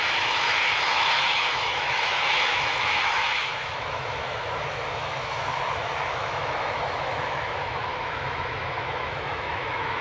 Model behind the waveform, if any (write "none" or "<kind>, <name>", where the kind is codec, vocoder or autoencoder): autoencoder, DAC-VAE